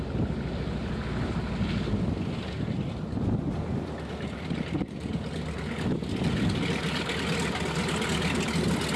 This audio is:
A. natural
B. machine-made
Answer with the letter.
A